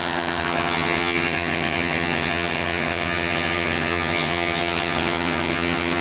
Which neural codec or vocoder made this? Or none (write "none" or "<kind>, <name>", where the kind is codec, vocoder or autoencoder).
vocoder, HiFi-GAN